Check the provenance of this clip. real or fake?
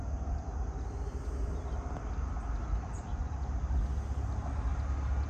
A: real